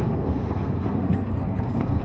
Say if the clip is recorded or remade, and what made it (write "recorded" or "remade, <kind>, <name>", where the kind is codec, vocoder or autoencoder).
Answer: remade, codec, SNAC